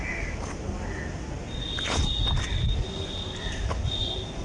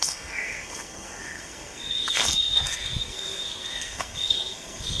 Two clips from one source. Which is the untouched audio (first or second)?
first